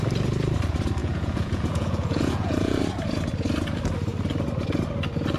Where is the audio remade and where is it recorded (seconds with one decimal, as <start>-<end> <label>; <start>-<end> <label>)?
0.0-1.0 recorded; 1.0-2.8 remade; 2.8-5.4 recorded